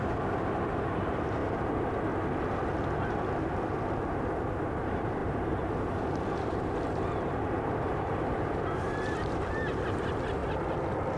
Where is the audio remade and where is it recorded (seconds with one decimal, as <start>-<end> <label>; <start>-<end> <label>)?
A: 0.0-1.4 remade; 1.4-4.6 recorded; 4.6-10.4 remade; 10.4-11.2 recorded